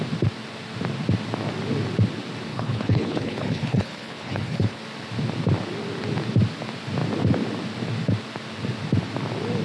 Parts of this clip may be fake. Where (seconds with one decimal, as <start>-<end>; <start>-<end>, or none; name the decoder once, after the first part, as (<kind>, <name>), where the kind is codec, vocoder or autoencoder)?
2.5-4.8 (codec, HILCodec)